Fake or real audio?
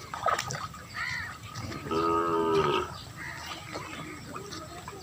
fake